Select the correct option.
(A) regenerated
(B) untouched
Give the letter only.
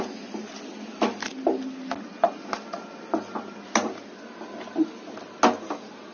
B